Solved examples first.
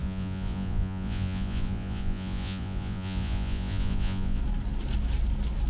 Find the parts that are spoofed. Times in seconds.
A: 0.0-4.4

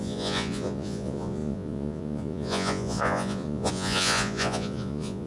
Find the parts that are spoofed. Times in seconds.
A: 0.0-5.3

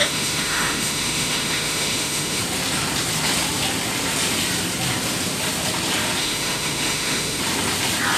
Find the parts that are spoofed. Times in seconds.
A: 0.0-2.4; 6.2-7.4

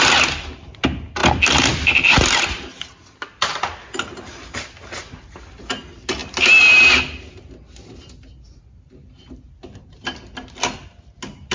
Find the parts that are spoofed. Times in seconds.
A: none

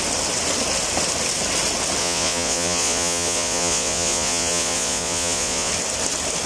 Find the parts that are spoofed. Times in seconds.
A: 2.0-5.7

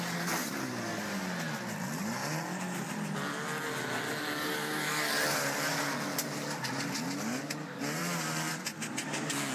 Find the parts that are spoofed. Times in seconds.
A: 8.0-8.5

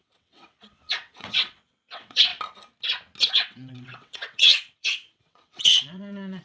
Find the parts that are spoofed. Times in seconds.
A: 0.0-2.3; 3.3-6.4

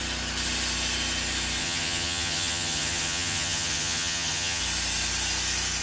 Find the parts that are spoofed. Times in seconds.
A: 1.6-4.6